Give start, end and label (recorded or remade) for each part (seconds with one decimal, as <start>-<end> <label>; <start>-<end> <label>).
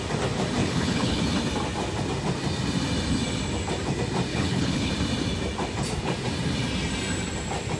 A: 0.0-0.6 recorded; 0.6-1.2 remade; 1.2-4.3 recorded; 4.3-4.9 remade; 4.9-7.8 recorded